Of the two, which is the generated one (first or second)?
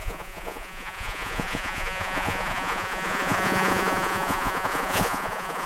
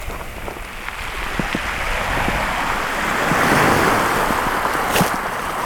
first